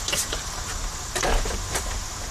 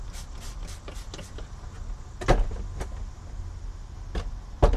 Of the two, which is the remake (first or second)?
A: first